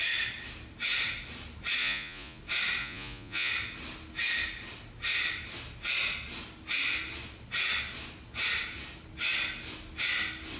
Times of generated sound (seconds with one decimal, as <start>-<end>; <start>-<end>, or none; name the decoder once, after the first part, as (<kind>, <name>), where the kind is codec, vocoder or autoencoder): 1.8-2.4 (vocoder, Vocos); 2.8-3.5